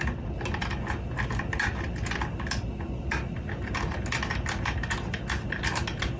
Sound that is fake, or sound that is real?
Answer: real